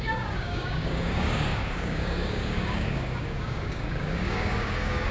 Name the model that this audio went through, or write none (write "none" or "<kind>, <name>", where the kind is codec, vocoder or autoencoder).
codec, DAC